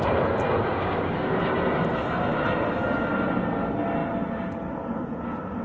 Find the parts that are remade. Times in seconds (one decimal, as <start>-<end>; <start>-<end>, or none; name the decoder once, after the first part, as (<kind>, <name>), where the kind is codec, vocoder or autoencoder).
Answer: 0.7-1.4 (codec, DAC)